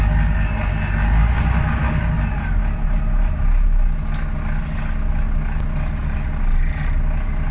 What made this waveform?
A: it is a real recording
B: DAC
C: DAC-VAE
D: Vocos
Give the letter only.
A